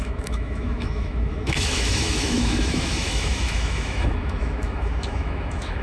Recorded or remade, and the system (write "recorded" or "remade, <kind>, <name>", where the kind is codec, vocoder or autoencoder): remade, autoencoder, DAC-VAE